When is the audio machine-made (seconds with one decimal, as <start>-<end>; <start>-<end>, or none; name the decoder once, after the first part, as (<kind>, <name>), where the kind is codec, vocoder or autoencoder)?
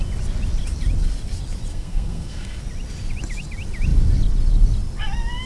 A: 1.7-2.6 (codec, SNAC)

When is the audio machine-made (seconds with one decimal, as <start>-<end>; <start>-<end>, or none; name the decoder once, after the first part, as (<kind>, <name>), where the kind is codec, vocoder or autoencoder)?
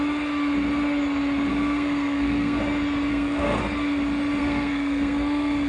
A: 1.5-2.6 (codec, SNAC); 3.1-3.6; 4.4-5.7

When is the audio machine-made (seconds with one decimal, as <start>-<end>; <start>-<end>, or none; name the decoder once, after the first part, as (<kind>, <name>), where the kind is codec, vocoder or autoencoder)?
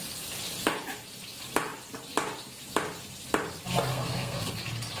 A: 3.9-4.5 (codec, SNAC)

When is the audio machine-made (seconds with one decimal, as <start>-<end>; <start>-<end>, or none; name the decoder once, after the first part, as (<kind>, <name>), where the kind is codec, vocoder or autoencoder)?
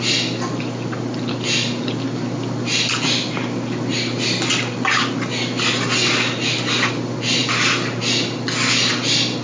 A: none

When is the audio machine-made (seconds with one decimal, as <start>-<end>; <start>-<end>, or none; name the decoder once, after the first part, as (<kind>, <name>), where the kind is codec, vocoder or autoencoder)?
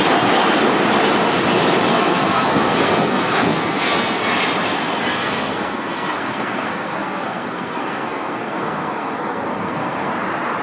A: 1.9-4.2 (codec, SNAC); 5.1-10.1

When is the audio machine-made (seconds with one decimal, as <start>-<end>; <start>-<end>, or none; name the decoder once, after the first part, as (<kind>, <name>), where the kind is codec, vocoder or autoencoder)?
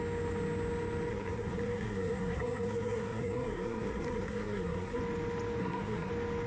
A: 1.1-5.0 (codec, SNAC); 5.6-6.1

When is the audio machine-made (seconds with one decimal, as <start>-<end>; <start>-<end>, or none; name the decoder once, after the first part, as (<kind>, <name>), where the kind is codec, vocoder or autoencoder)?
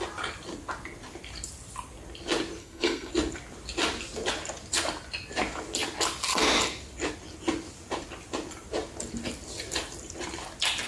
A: 2.6-3.1 (codec, SNAC)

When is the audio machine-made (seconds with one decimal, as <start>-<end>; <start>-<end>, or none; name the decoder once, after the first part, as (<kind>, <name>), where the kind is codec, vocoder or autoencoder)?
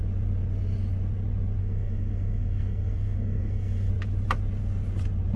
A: 1.6-3.9 (codec, SNAC)